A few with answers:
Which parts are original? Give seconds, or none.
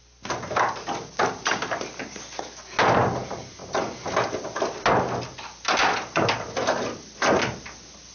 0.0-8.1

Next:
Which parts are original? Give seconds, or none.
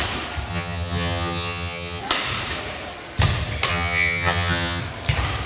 0.0-0.5; 2.0-3.7; 4.8-5.5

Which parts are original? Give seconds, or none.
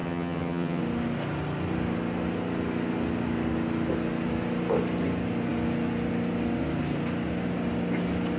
0.8-8.4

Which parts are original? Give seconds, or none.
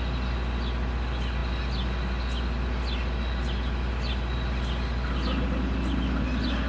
0.0-6.7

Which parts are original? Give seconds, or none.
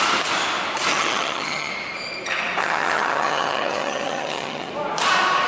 0.0-0.9; 1.7-2.6; 4.7-5.5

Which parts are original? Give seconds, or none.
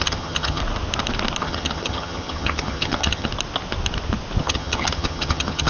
0.6-1.4; 3.3-4.4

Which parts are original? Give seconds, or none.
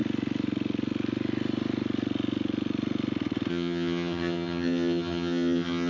0.0-3.5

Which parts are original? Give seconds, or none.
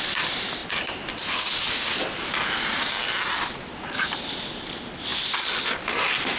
0.0-6.4